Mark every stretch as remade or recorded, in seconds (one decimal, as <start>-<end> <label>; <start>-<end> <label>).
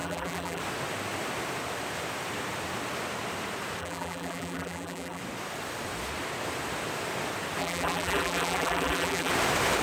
0.0-0.6 remade; 0.6-3.8 recorded; 3.8-5.2 remade; 5.2-7.6 recorded; 7.6-9.3 remade; 9.3-9.8 recorded